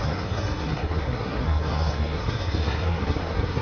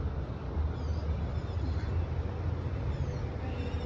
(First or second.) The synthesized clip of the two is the first